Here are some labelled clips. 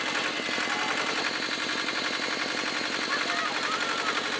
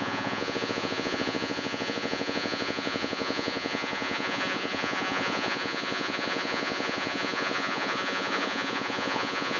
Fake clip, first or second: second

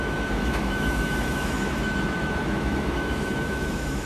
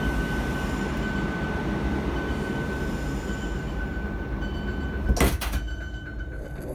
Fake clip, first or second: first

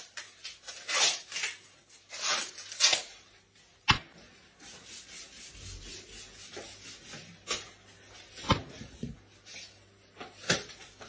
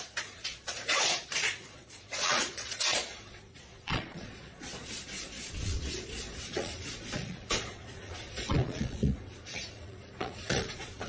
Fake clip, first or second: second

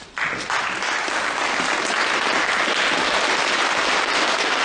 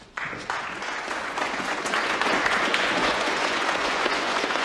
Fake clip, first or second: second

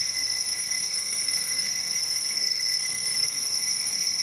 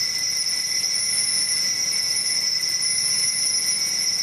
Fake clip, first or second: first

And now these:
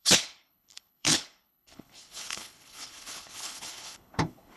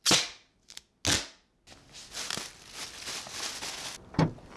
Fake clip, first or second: first